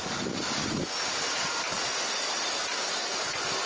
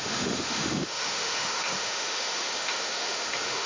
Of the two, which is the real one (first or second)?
first